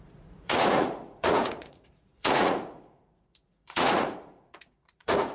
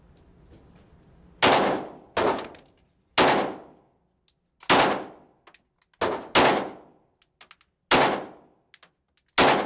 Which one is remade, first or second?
first